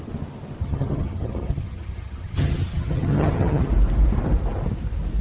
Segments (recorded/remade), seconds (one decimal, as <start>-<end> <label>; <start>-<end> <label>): 0.0-0.6 recorded; 0.6-3.7 remade; 3.7-5.2 recorded